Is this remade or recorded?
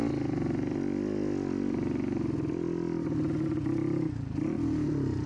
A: recorded